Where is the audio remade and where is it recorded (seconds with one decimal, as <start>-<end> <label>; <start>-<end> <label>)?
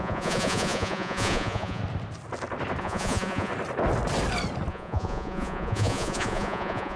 0.0-1.8 remade; 1.8-2.8 recorded; 2.8-3.5 remade; 3.5-4.7 recorded; 4.7-7.0 remade